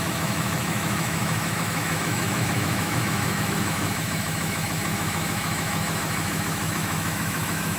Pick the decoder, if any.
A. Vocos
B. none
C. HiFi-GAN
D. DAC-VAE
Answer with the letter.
D